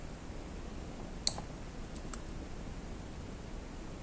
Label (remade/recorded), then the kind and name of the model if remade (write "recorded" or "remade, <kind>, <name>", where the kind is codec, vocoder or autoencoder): recorded